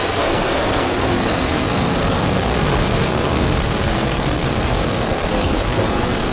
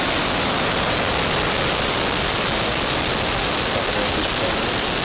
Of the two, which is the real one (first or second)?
second